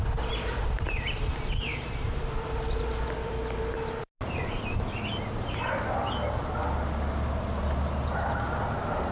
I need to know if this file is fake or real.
real